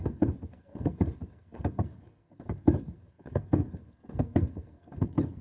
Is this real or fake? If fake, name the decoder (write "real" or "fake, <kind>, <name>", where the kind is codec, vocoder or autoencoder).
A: fake, codec, SNAC